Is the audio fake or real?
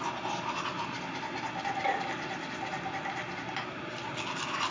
real